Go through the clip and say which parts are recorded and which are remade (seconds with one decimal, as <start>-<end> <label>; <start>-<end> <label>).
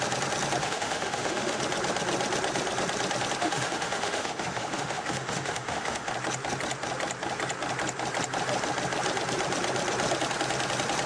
0.0-0.6 recorded; 0.6-1.6 remade; 1.6-3.4 recorded; 3.4-6.1 remade; 6.1-11.1 recorded